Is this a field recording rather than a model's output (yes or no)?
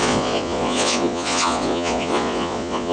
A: no